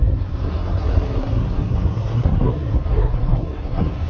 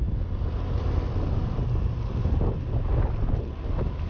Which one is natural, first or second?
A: second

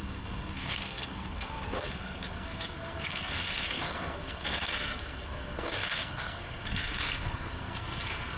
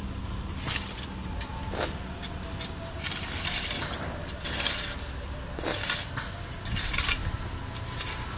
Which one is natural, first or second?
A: second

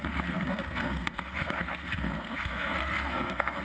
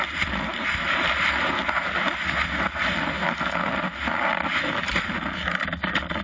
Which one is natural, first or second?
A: second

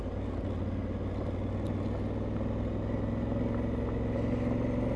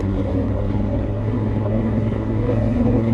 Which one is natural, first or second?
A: first